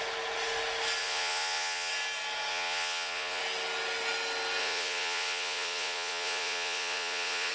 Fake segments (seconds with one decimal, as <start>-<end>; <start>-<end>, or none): 1.0-1.9; 2.5-3.4; 4.6-7.5